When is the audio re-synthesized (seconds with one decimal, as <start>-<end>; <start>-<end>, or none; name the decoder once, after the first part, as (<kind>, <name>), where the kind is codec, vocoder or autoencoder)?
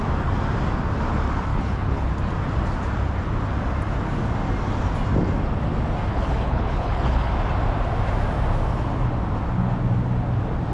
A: 1.5-2.1 (codec, HILCodec); 6.1-7.3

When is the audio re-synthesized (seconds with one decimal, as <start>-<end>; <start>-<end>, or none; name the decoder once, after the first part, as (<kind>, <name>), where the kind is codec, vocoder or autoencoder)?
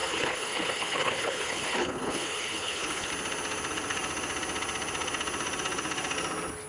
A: 0.0-3.1 (codec, HILCodec)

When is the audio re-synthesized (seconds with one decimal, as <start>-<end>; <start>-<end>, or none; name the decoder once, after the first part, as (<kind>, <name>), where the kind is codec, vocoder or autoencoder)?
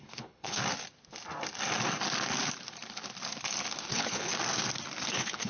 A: 0.0-0.6 (codec, HILCodec); 3.9-4.3; 5.1-5.5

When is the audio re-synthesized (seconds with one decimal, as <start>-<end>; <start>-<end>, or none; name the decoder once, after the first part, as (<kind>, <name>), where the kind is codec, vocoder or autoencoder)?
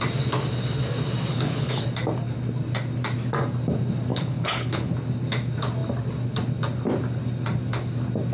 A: 1.3-1.8 (codec, HILCodec); 4.1-4.9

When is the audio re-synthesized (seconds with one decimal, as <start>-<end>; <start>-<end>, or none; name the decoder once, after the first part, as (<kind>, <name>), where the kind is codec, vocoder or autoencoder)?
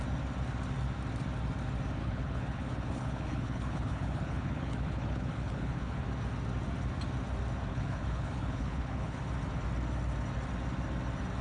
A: 2.0-6.0 (codec, HILCodec); 7.7-9.2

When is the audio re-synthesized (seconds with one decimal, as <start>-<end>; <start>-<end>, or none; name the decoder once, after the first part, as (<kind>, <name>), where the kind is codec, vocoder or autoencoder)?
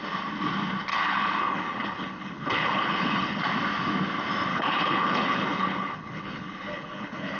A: 0.9-3.4 (codec, HILCodec); 4.5-7.4